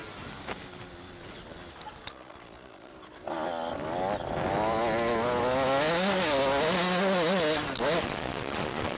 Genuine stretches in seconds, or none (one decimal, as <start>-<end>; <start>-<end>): 0.0-2.1; 2.9-8.0